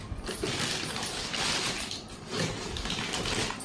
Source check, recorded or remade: recorded